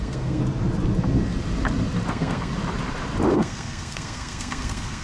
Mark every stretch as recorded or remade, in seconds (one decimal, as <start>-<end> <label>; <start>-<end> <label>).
0.0-0.4 remade; 0.4-2.1 recorded; 2.1-2.5 remade; 2.5-3.3 recorded; 3.3-5.0 remade